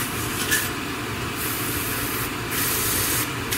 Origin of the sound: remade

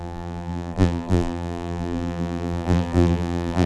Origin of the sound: remade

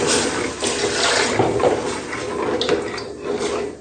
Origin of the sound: recorded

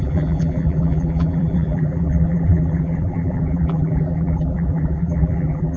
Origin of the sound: remade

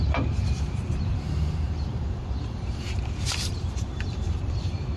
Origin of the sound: remade